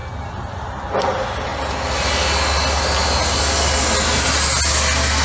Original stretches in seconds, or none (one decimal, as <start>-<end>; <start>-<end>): 0.0-5.2